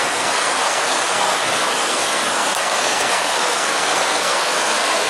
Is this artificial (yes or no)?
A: yes